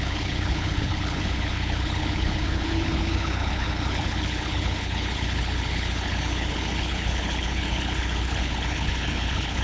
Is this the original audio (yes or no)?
no